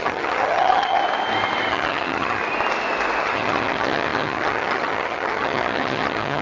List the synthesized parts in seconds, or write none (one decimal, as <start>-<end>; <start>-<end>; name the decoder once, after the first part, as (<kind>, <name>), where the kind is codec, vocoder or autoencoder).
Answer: 0.0-1.0 (vocoder, HiFi-GAN); 1.7-2.4; 3.2-6.4